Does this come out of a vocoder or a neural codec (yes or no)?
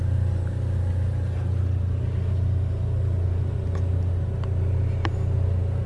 no